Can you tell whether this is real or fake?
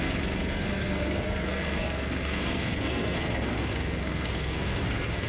fake